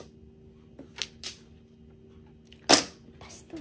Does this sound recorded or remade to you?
recorded